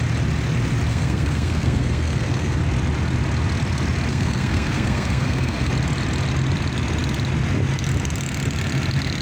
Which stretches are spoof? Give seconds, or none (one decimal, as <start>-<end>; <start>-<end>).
0.9-2.6; 4.1-5.7